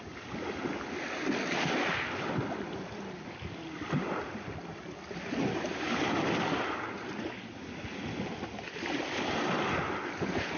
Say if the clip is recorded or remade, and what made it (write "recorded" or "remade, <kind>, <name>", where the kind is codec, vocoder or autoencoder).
recorded